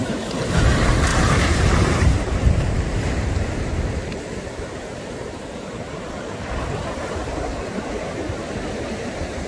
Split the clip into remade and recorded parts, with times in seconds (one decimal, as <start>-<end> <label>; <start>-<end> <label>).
0.0-9.5 remade